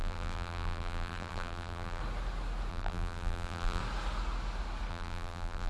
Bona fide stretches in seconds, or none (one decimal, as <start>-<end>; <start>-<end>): 2.0-2.7; 3.8-4.9